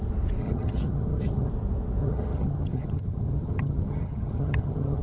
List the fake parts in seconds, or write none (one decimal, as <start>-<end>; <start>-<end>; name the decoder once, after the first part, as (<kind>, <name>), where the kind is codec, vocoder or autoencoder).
0.4-1.5 (vocoder, HiFi-GAN); 2.0-5.0